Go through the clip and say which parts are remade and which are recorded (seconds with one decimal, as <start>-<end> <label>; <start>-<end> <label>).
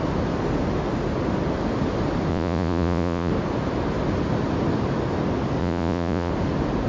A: 0.0-2.3 recorded; 2.3-3.3 remade; 3.3-5.6 recorded; 5.6-6.3 remade; 6.3-6.9 recorded